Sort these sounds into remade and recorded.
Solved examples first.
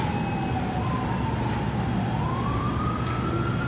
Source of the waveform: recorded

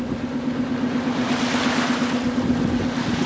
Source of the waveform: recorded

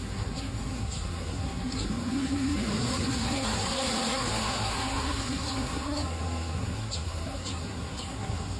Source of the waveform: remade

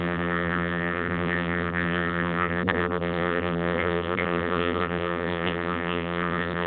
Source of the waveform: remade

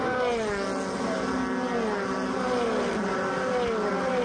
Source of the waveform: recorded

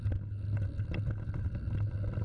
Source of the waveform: recorded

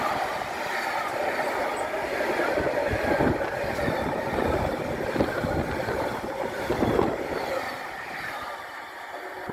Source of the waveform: recorded